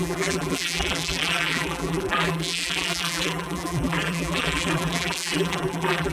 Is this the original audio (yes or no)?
no